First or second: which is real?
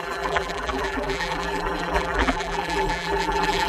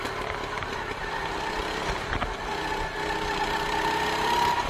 second